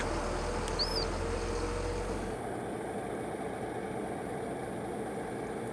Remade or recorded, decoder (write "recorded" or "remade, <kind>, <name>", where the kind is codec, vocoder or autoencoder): recorded